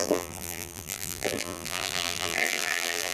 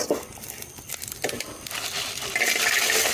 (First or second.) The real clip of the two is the second